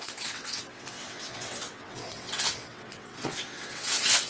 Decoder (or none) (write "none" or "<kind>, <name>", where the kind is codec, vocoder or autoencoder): vocoder, WaveNeXt